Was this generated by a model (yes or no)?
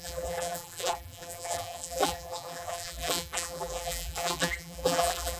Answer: yes